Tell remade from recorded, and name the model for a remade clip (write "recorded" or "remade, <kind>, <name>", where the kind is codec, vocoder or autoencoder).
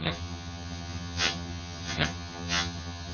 remade, vocoder, HiFi-GAN